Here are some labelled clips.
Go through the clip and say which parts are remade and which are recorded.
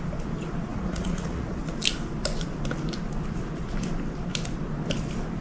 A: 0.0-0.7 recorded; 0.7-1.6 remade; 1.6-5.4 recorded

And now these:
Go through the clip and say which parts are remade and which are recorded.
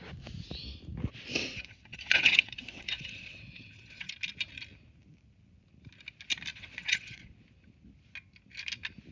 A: 0.0-1.4 recorded; 1.4-4.1 remade; 4.1-6.5 recorded; 6.5-7.3 remade; 7.3-9.1 recorded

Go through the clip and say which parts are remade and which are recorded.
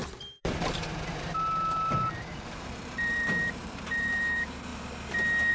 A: 0.0-4.7 remade; 4.7-5.5 recorded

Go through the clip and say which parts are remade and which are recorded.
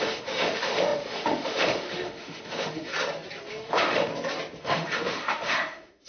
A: 0.0-2.9 remade; 2.9-3.5 recorded; 3.5-4.1 remade; 4.1-4.6 recorded; 4.6-6.1 remade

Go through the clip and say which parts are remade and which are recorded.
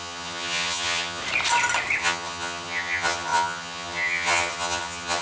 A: 0.0-1.2 remade; 1.2-2.0 recorded; 2.0-5.2 remade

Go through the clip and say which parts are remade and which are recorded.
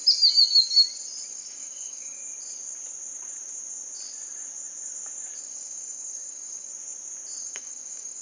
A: 0.0-1.3 recorded; 1.3-2.2 remade; 2.2-5.4 recorded; 5.4-6.7 remade; 6.7-7.4 recorded; 7.4-8.2 remade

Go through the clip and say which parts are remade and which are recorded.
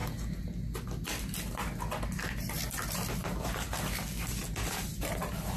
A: 0.0-3.2 recorded; 3.2-3.8 remade; 3.8-4.9 recorded; 4.9-5.6 remade